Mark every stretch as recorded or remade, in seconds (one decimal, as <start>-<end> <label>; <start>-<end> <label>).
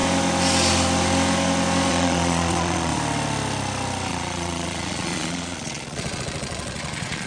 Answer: 0.0-1.9 recorded; 1.9-2.9 remade; 2.9-4.1 recorded; 4.1-7.3 remade